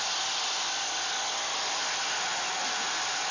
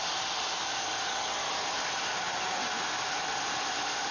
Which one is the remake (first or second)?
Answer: second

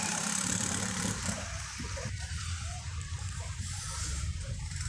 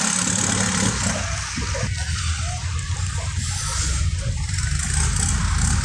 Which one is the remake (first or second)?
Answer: first